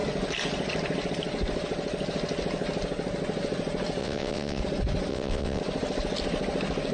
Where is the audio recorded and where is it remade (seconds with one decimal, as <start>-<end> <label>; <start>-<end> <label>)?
0.0-4.0 recorded; 4.0-4.6 remade; 4.6-5.1 recorded; 5.1-5.6 remade; 5.6-6.9 recorded